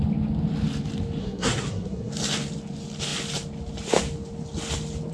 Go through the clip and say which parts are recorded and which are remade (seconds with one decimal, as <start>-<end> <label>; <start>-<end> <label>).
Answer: 0.0-1.2 recorded; 1.2-2.1 remade; 2.1-5.1 recorded